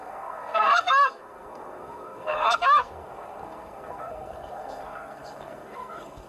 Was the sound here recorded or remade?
remade